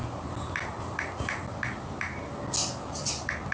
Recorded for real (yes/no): yes